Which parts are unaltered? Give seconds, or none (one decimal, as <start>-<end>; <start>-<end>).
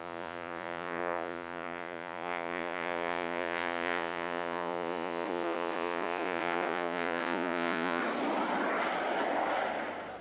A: 8.0-10.2